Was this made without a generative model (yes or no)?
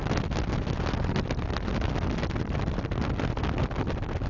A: yes